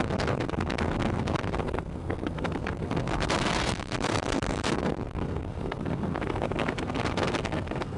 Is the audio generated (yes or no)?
yes